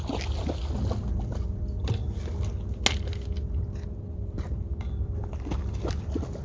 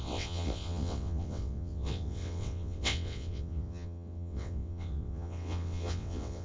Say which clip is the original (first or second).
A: first